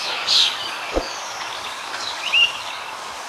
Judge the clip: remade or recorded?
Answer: remade